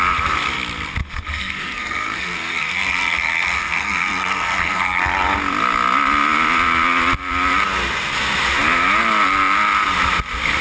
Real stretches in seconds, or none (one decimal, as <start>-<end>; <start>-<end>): 0.0-1.0; 5.0-10.6